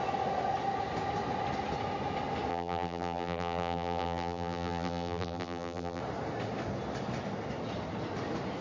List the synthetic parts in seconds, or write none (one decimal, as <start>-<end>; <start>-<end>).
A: 2.5-6.0